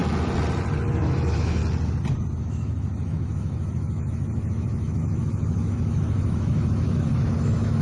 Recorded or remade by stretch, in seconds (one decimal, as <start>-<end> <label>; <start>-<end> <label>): 0.0-0.9 recorded; 0.9-1.6 remade; 1.6-2.4 recorded; 2.4-7.8 remade